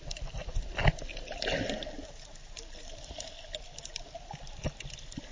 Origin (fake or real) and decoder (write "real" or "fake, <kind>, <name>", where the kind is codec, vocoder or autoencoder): real